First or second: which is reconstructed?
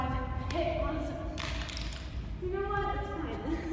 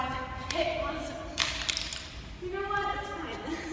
second